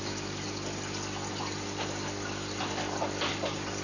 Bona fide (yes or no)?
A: yes